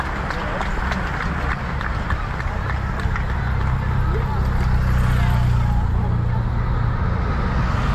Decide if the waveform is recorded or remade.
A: recorded